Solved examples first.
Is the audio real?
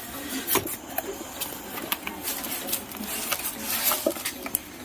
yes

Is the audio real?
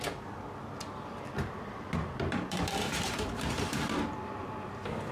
no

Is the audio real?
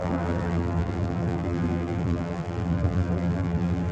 no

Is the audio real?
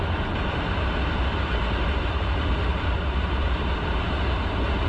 no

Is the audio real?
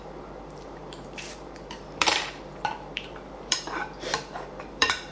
no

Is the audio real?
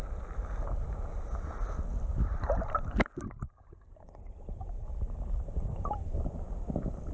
yes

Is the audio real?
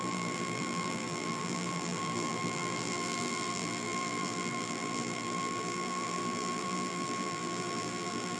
no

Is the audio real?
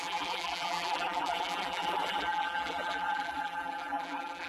no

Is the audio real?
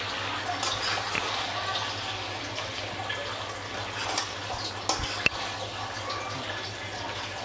yes